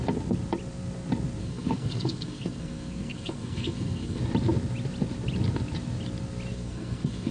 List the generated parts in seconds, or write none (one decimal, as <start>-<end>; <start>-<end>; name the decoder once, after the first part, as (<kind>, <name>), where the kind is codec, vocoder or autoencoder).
1.4-4.2 (codec, SNAC); 6.5-7.3